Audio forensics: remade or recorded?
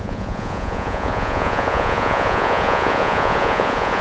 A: remade